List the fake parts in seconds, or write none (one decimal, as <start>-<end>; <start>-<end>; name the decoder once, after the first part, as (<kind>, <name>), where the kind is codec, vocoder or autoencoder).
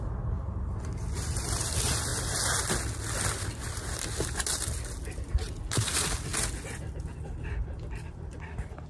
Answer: none